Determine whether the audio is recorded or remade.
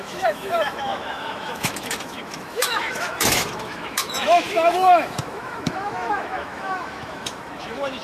remade